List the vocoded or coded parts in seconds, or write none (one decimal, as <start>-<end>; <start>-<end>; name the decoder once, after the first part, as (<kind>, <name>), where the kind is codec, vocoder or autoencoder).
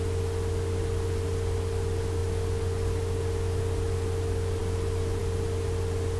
none